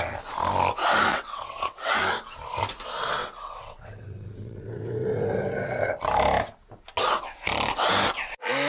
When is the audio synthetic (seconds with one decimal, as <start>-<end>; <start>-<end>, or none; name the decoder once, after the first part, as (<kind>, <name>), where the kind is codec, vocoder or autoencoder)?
1.1-2.0 (vocoder, WaveNeXt); 3.2-4.6